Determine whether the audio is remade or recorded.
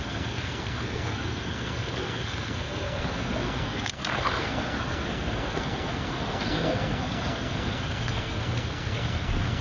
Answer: remade